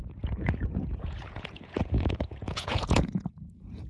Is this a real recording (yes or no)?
no